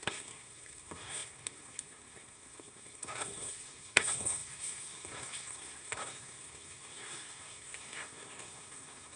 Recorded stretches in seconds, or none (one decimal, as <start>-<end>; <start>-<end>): none